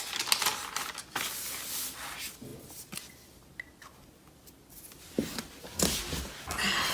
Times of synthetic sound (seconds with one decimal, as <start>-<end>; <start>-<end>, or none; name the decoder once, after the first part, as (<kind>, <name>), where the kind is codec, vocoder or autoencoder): none